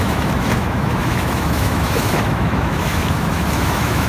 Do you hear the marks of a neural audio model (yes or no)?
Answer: yes